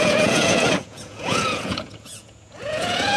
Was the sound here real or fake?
fake